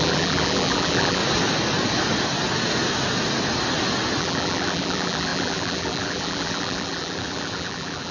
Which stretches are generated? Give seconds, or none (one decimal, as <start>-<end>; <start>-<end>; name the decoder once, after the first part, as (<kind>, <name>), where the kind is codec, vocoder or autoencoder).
0.0-1.2 (vocoder, BigVGAN v2); 4.2-8.1